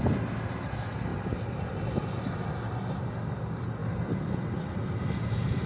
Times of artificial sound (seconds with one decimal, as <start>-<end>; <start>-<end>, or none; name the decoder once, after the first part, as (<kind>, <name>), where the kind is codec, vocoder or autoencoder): 1.1-3.1 (vocoder, BigVGAN v2); 3.8-4.6